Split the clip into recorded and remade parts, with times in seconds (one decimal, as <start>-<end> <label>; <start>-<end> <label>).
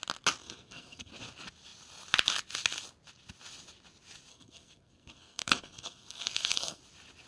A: 0.0-0.4 recorded; 0.4-1.1 remade; 1.1-4.3 recorded; 4.3-6.8 remade; 6.8-7.3 recorded